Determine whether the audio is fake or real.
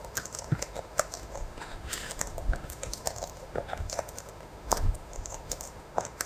fake